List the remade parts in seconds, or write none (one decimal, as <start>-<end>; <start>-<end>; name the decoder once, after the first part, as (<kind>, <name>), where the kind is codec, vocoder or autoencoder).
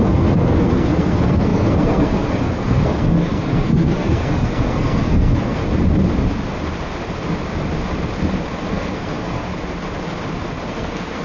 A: 0.0-5.6 (codec, SNAC); 8.7-9.5; 10.7-11.2